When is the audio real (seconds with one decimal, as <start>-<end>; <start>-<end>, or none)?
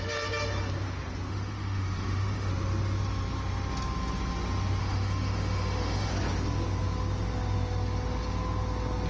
0.0-1.3; 2.5-4.8; 6.1-9.1